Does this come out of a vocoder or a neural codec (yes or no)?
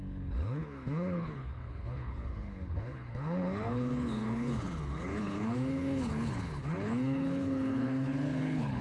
yes